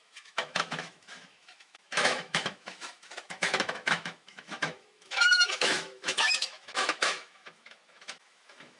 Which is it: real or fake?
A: fake